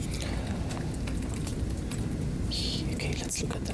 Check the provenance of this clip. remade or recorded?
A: recorded